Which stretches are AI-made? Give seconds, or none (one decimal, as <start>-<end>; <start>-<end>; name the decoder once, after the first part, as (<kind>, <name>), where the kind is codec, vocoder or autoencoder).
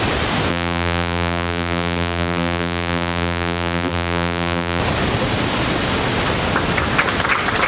0.5-4.8 (vocoder, BigVGAN v2)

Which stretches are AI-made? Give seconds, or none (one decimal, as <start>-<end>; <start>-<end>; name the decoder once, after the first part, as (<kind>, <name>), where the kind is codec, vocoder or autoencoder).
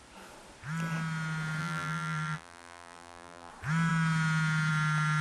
1.6-3.5 (vocoder, BigVGAN v2)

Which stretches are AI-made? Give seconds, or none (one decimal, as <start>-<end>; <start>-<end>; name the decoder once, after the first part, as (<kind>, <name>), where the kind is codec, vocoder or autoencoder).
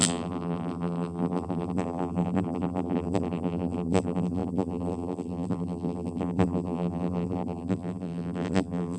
0.0-9.0 (vocoder, BigVGAN v2)